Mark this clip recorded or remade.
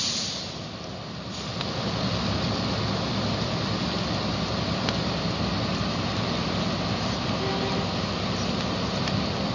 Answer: recorded